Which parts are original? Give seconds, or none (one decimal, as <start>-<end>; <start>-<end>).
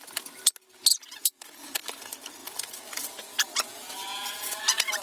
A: 0.0-0.9; 1.8-2.4